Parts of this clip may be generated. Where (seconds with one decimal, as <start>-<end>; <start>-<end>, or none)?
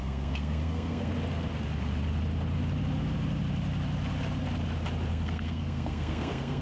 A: 0.0-1.1; 5.1-6.6